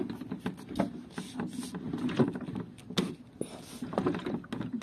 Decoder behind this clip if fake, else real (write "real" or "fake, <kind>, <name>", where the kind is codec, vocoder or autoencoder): real